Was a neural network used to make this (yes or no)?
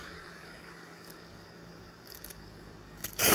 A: yes